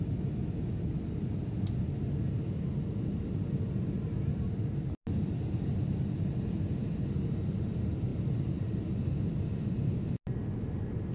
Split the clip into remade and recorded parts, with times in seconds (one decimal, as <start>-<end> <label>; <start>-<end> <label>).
0.0-11.1 recorded